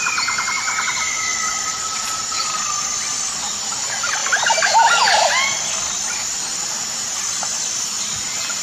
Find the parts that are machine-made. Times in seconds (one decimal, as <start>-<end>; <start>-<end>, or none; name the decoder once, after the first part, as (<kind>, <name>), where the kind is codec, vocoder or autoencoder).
1.3-3.4 (vocoder, BigVGAN v2)